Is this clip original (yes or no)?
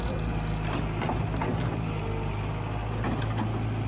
yes